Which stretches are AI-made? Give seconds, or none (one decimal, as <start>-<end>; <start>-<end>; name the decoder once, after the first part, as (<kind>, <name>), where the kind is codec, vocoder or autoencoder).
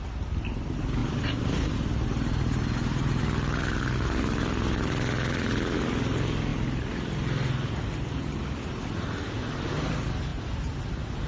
1.0-3.2 (vocoder, BigVGAN v2); 10.3-11.3